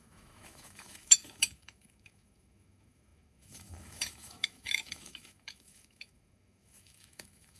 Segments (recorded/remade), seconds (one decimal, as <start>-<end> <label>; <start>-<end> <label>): 0.0-7.6 remade